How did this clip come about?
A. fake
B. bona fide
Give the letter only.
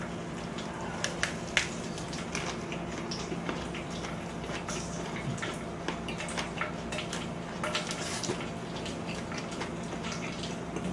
B